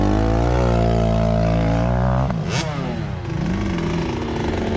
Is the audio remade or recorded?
recorded